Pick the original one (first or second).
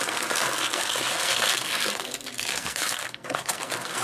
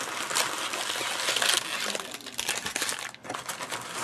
second